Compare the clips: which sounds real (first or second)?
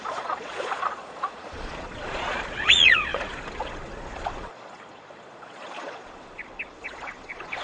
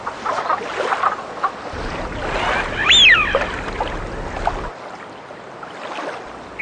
second